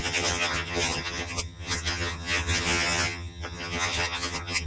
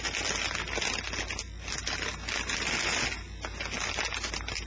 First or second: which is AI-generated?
first